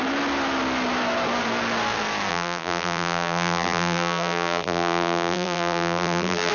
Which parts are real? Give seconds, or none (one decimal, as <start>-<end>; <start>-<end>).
0.0-2.3